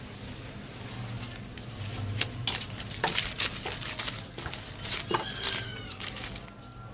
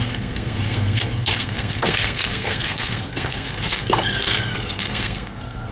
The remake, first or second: second